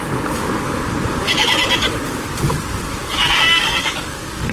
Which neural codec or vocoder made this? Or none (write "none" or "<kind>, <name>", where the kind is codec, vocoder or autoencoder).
codec, DAC